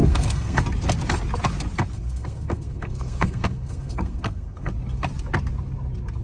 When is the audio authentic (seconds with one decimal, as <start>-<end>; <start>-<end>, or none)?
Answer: 0.6-1.9; 4.7-6.2

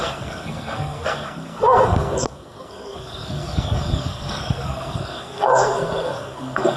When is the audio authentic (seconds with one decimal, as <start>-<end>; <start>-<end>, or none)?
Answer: none

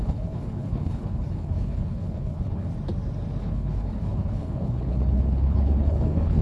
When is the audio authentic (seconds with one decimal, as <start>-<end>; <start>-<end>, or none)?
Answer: 2.7-3.4

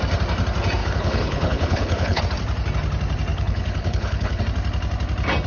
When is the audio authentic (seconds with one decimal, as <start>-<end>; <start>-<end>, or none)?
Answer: 0.0-0.8; 2.2-3.3; 4.4-5.5

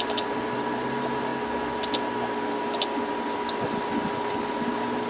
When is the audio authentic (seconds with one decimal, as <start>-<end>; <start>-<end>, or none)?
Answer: 1.3-4.4

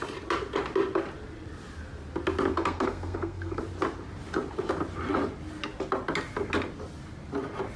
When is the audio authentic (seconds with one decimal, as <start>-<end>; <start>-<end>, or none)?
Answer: 0.0-2.5; 3.6-7.8

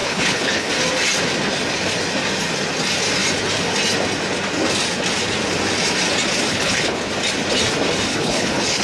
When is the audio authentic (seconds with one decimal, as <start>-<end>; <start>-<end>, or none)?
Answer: 0.7-6.5; 7.1-8.1

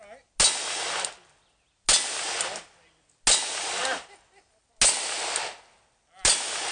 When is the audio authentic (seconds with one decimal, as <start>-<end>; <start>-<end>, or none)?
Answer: 0.0-6.7